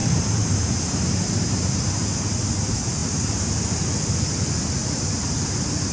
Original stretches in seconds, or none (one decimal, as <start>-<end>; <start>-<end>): 2.0-3.0; 3.5-4.8; 5.4-5.9